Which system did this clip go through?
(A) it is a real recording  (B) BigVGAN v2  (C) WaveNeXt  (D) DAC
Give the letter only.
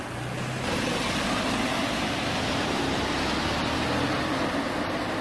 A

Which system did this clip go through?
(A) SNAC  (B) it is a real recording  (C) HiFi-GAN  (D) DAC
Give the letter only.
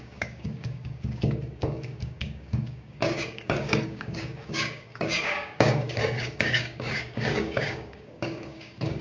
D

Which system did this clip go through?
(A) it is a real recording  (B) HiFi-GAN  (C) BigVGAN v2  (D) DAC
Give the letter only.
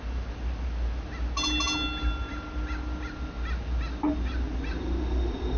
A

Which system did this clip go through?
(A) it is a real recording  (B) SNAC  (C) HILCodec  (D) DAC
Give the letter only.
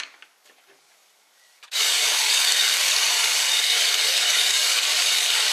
D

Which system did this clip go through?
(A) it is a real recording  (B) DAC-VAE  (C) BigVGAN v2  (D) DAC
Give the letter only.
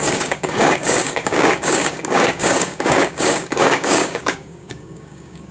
D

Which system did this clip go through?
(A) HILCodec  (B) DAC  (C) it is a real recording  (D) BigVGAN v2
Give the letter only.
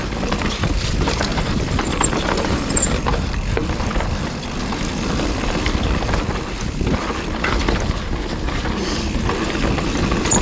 C